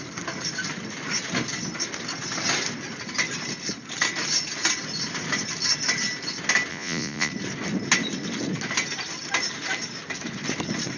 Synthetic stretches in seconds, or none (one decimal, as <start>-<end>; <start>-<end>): 6.7-7.3